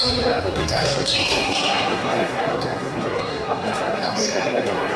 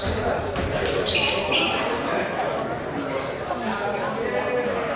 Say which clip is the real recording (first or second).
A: second